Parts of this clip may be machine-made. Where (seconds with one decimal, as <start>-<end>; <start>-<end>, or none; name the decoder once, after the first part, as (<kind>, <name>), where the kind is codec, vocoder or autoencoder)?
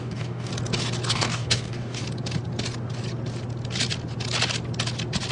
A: 0.0-0.5 (codec, DAC); 1.1-2.0